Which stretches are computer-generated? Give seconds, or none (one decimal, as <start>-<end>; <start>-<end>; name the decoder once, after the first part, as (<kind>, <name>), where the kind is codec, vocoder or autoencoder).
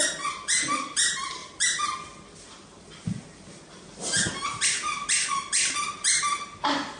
none